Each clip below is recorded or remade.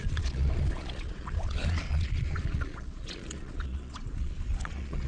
remade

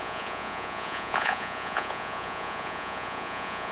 remade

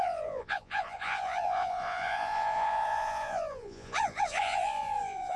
remade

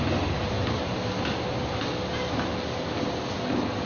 recorded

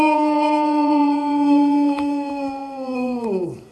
remade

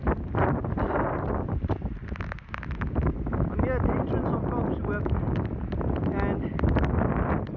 recorded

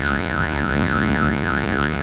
remade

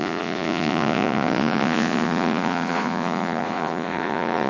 remade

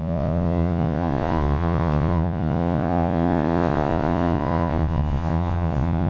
remade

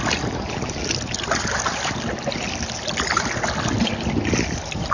recorded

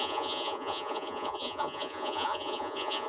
remade